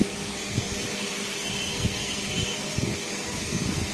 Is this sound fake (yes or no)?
yes